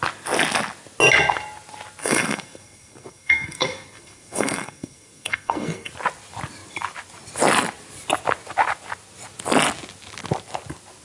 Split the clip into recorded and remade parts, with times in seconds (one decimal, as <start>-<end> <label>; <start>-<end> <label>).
0.0-2.0 recorded; 2.0-5.9 remade; 5.9-11.0 recorded